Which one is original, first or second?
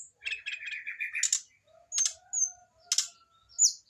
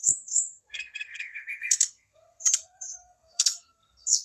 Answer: first